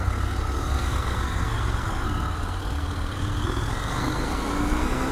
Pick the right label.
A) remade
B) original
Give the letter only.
A